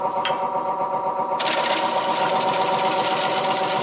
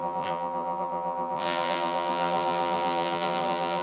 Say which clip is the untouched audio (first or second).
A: first